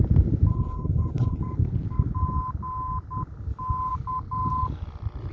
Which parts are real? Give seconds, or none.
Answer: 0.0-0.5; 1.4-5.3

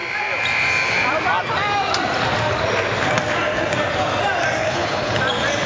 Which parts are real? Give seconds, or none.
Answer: 0.0-4.6; 5.2-5.7